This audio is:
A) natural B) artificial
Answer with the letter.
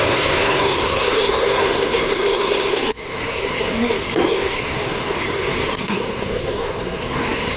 B